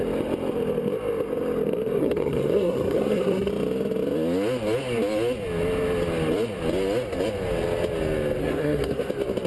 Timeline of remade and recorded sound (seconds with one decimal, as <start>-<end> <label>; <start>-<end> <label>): 0.0-2.0 recorded; 2.0-3.5 remade; 3.5-8.4 recorded; 8.4-9.1 remade; 9.1-9.5 recorded